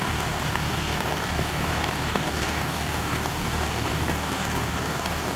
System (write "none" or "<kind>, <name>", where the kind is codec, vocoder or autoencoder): codec, DAC